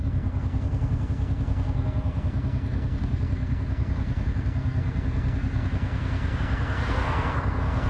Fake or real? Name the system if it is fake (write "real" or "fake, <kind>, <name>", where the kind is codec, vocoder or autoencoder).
fake, codec, SNAC